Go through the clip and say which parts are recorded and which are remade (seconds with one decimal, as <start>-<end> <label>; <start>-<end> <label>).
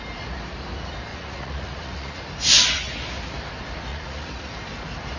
0.0-1.1 recorded; 1.1-2.2 remade; 2.2-3.9 recorded; 3.9-4.5 remade; 4.5-5.2 recorded